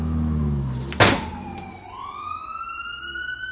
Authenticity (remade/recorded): recorded